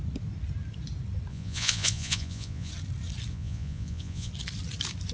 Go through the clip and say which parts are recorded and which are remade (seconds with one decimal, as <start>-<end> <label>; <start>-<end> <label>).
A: 0.0-1.3 recorded; 1.3-2.7 remade; 2.7-3.3 recorded; 3.3-4.3 remade; 4.3-5.1 recorded